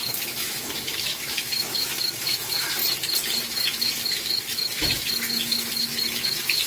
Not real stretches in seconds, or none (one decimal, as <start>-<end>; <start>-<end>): 0.0-2.8; 3.4-6.7